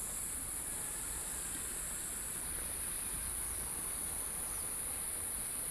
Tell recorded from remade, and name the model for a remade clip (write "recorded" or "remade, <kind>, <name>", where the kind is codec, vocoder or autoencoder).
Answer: recorded